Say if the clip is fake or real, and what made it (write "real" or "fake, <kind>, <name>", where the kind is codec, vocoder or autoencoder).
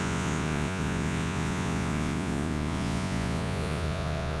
fake, vocoder, Vocos